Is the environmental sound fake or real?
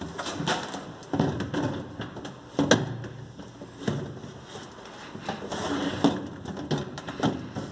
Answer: real